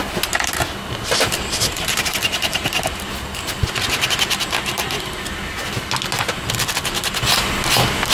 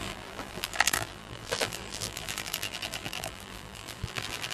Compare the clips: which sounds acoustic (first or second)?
first